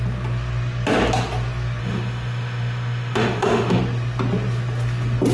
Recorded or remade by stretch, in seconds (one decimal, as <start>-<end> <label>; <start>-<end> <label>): 0.0-1.8 recorded; 1.8-3.8 remade; 3.8-5.3 recorded